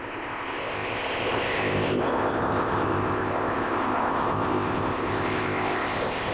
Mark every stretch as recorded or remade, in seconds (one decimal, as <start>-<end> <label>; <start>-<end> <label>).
0.0-6.3 remade